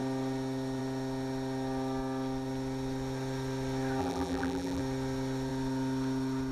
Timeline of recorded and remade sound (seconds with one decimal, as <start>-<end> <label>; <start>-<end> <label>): 0.0-4.0 recorded; 4.0-4.8 remade; 4.8-6.5 recorded